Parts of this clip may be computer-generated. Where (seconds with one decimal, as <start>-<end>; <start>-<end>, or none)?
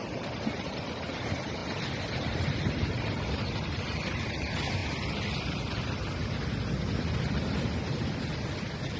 none